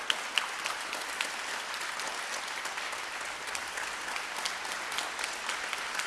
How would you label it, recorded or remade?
recorded